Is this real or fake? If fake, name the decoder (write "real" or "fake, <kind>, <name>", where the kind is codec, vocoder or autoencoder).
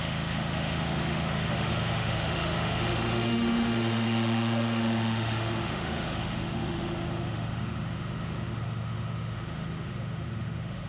fake, autoencoder, DAC-VAE